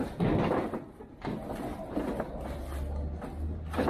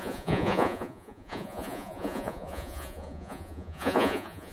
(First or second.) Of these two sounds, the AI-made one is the second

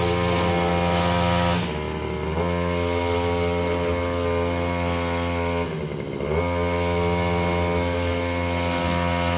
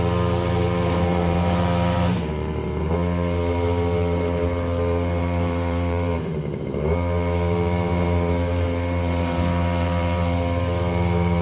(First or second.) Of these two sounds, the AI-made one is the second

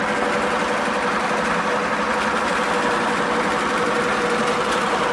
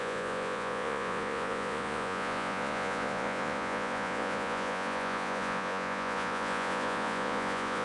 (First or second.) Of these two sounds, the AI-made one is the second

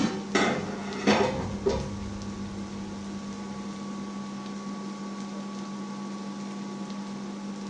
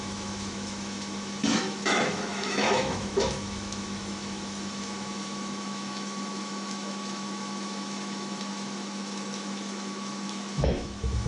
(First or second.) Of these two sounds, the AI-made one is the second